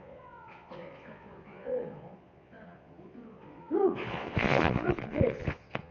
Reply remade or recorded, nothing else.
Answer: remade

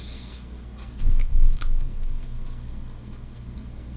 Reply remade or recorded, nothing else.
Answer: remade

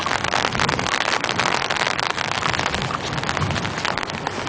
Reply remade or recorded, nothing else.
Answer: recorded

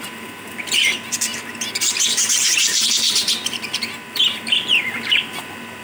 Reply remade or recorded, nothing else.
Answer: remade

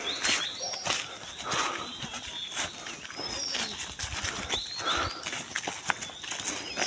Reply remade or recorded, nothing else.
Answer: recorded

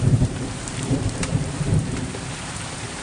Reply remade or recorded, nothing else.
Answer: remade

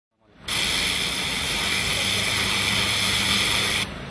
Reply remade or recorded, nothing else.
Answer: recorded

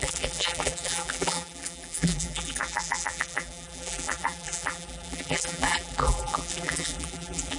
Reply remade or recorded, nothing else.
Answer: remade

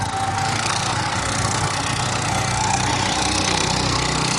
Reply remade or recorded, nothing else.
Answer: remade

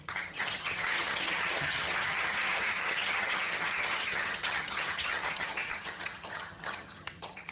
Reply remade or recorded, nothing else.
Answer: remade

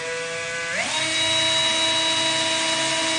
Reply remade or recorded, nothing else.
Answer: recorded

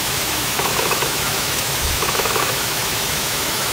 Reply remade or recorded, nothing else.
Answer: remade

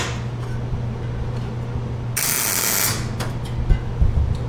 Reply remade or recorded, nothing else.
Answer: recorded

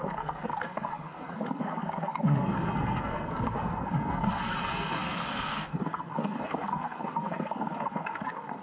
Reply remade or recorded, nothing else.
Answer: remade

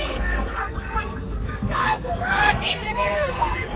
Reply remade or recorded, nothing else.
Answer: remade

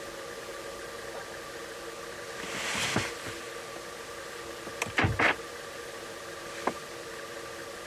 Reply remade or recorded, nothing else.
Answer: recorded